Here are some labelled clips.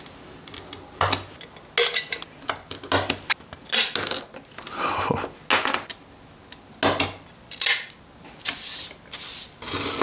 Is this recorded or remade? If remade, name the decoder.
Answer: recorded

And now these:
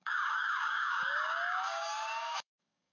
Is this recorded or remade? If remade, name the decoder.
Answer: remade, codec, DAC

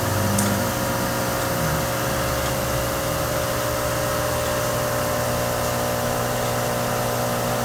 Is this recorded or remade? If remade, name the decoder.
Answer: recorded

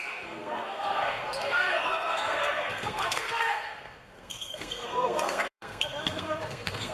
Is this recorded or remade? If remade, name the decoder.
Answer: remade, codec, SNAC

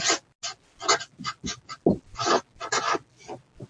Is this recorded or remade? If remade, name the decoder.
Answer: recorded